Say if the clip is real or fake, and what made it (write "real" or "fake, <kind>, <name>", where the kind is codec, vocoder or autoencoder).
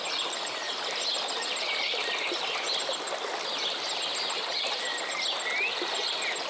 real